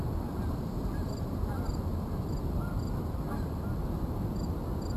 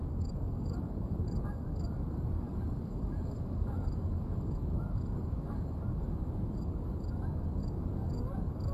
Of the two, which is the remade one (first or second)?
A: second